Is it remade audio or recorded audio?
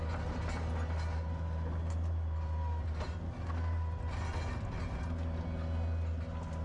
recorded